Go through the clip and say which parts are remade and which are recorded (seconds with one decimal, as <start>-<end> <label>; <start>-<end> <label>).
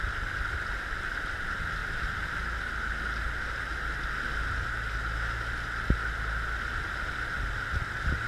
0.0-1.8 recorded; 1.8-2.6 remade; 2.6-8.3 recorded